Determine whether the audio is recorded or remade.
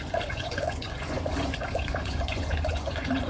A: remade